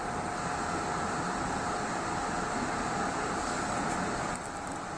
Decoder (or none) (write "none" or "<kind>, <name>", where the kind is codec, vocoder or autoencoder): none